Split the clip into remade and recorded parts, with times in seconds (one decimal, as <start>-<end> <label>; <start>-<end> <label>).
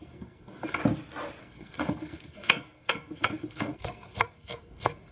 0.0-0.8 remade; 0.8-1.4 recorded; 1.4-5.1 remade